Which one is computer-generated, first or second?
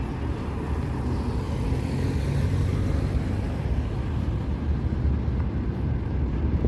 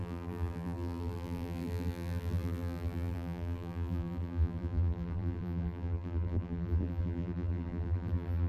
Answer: second